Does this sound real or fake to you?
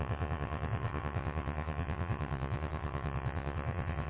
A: fake